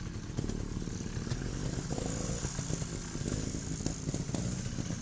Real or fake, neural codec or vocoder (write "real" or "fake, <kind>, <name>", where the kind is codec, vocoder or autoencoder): real